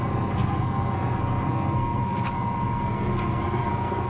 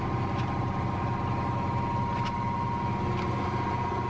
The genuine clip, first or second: second